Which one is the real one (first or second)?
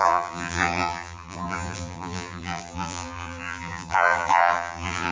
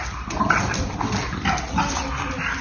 second